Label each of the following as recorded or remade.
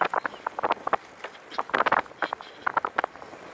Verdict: recorded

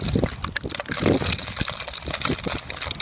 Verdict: recorded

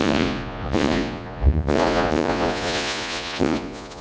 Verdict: remade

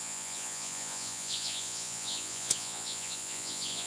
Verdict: remade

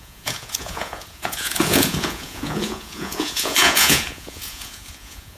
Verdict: remade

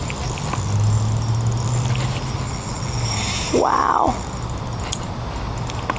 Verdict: recorded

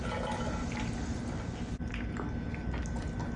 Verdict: recorded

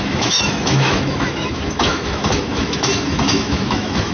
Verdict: remade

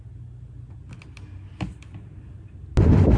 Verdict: recorded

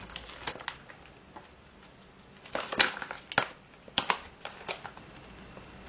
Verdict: recorded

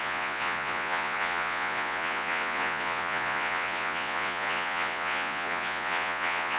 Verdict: remade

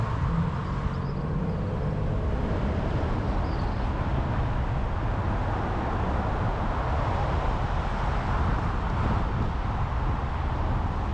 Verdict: recorded